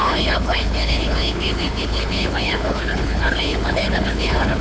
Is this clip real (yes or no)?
no